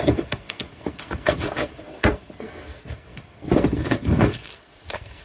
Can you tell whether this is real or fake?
fake